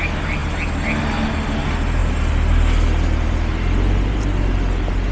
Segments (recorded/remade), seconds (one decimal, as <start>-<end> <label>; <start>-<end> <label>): 0.0-5.1 recorded